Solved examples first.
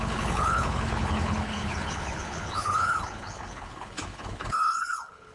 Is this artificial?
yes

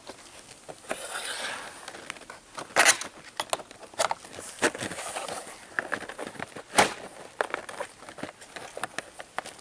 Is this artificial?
no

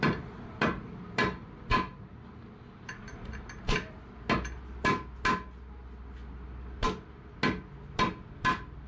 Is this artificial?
no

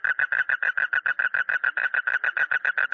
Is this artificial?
no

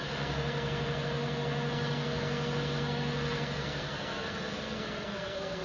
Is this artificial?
yes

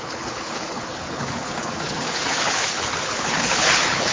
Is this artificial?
yes